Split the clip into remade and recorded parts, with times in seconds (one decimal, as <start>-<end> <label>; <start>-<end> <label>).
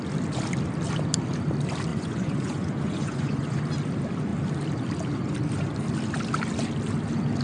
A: 0.0-1.9 recorded; 1.9-3.6 remade; 3.6-7.4 recorded